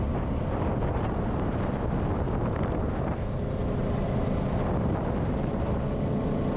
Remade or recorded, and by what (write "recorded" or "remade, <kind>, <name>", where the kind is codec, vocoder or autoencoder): recorded